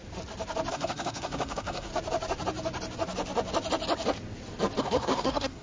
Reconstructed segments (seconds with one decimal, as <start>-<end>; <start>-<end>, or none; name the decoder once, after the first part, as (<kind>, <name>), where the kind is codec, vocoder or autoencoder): 0.7-1.9 (codec, SNAC); 4.8-5.6